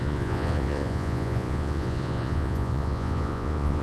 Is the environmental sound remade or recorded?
remade